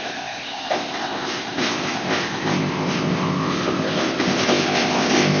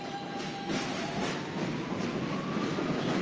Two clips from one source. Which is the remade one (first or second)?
first